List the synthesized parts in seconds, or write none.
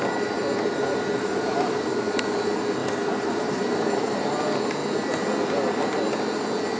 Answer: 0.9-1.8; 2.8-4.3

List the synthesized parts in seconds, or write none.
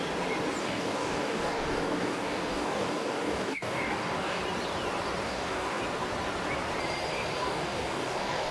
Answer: 0.6-4.4; 5.2-5.8; 7.4-8.5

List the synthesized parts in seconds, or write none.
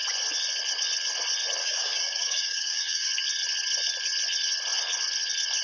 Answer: 1.6-3.1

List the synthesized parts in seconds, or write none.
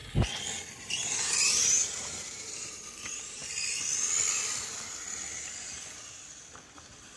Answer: 0.8-3.4; 6.8-7.2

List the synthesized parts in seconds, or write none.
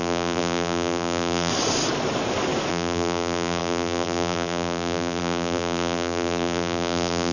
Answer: 0.0-1.5; 2.7-7.3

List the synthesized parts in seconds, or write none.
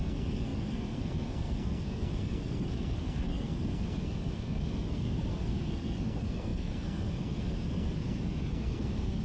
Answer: 0.0-9.2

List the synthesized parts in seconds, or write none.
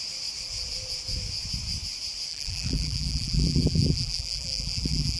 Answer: 2.3-5.2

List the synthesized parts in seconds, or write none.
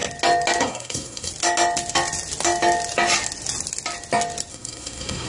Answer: 0.6-1.3; 4.5-5.3